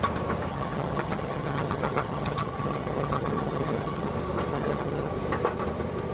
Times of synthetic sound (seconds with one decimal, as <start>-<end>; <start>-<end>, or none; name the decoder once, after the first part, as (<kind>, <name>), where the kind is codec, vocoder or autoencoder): 0.5-4.1 (vocoder, HiFi-GAN); 4.5-5.1

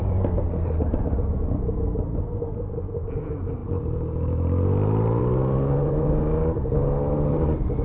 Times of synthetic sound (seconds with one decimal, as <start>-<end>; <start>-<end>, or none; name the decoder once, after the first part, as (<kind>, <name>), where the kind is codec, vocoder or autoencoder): none

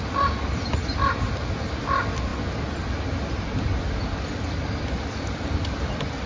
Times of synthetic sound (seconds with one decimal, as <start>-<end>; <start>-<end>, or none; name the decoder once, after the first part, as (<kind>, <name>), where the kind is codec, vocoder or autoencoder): none